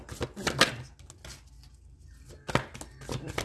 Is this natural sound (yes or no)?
yes